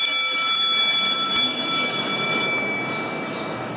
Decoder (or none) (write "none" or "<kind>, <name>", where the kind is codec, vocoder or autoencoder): none